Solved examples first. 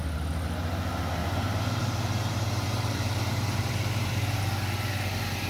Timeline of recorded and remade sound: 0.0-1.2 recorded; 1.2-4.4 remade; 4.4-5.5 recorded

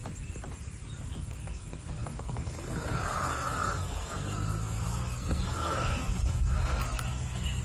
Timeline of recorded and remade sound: 0.0-1.1 recorded; 1.1-7.6 remade

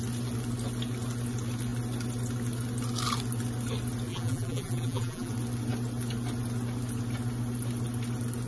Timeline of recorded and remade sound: 0.0-4.1 recorded; 4.1-5.3 remade; 5.3-8.5 recorded

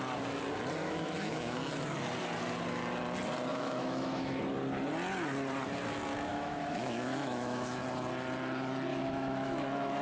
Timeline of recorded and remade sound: 0.0-0.8 recorded; 0.8-1.7 remade; 1.7-3.5 recorded; 3.5-4.4 remade; 4.4-6.3 recorded; 6.3-7.8 remade; 7.8-8.9 recorded; 8.9-10.0 remade

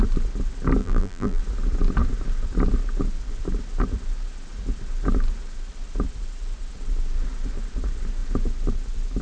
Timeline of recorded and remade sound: 0.0-0.8 recorded; 0.8-1.4 remade; 1.4-9.2 recorded